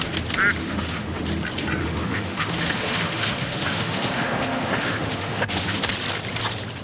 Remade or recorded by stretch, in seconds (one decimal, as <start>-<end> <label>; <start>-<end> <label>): 0.0-0.6 recorded; 0.6-1.2 remade; 1.2-1.8 recorded; 1.8-5.9 remade; 5.9-6.8 recorded